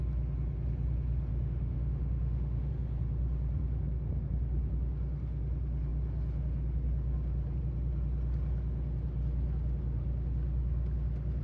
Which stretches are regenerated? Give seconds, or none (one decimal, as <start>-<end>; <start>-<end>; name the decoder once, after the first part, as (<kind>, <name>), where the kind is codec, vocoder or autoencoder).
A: 1.3-2.7 (autoencoder, DAC-VAE)